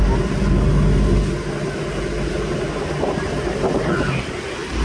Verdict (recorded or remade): recorded